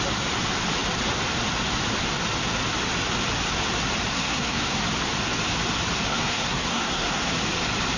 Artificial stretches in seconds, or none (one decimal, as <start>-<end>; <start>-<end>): 4.1-4.8; 6.1-7.3